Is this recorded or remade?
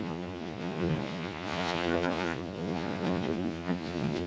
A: remade